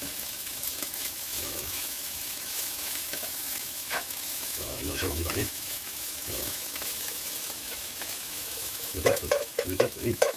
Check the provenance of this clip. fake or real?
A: fake